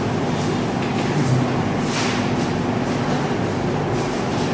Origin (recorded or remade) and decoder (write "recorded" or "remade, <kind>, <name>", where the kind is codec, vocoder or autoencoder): recorded